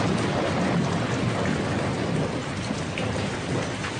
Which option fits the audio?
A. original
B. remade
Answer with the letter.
A